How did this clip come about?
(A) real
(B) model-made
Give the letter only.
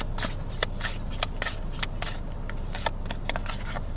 A